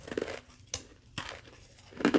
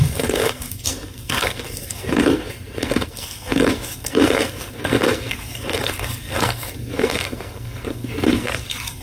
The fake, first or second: second